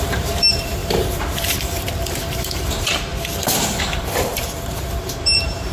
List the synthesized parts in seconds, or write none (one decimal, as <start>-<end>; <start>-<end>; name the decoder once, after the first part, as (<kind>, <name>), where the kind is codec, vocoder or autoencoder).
0.0-5.7 (vocoder, BigVGAN v2)